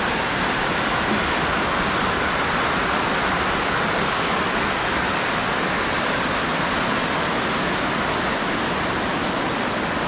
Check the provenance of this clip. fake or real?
real